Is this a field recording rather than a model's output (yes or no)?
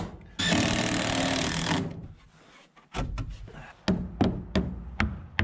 yes